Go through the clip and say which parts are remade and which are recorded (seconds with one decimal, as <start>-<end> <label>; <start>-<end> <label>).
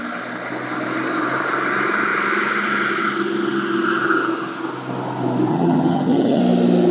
0.0-5.5 recorded; 5.5-6.4 remade; 6.4-6.9 recorded